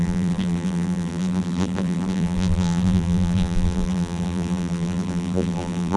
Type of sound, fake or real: fake